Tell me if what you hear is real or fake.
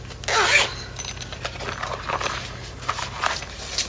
real